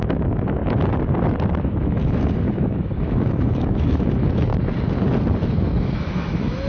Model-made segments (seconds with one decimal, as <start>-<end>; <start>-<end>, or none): 0.0-0.6; 1.6-4.5; 5.6-6.7